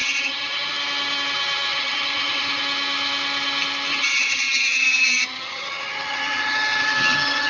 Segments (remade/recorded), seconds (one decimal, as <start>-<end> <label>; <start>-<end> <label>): 0.0-0.7 remade; 0.7-1.7 recorded; 1.7-2.6 remade; 2.6-3.9 recorded; 3.9-7.5 remade